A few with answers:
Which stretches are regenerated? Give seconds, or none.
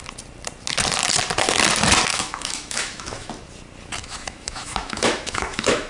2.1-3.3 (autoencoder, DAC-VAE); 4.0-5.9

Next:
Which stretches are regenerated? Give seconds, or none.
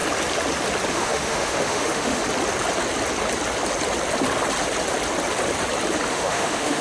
0.9-2.2 (autoencoder, DAC-VAE); 6.1-6.8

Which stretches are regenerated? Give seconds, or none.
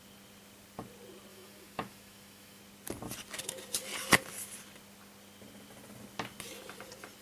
1.3-2.6 (autoencoder, DAC-VAE)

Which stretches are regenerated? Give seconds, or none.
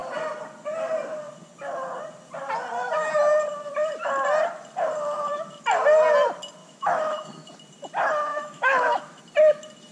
6.6-7.5 (autoencoder, DAC-VAE); 8.3-9.2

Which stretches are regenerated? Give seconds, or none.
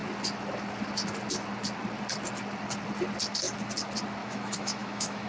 4.2-5.3 (autoencoder, DAC-VAE)